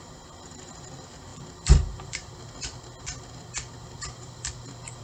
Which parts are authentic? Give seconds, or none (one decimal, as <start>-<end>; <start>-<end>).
0.0-1.3; 3.0-3.8